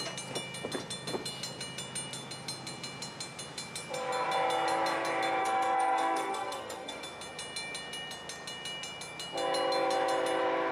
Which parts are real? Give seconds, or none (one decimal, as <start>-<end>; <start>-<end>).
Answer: 0.0-5.4; 7.0-10.7